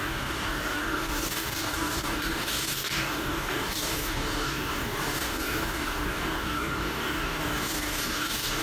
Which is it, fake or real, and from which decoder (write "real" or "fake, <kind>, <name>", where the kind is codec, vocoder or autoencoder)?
fake, codec, DAC